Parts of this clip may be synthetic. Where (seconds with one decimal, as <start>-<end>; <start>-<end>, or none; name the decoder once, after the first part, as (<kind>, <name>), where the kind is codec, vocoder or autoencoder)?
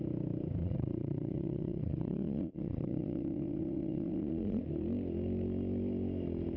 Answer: 0.6-4.6 (vocoder, Vocos)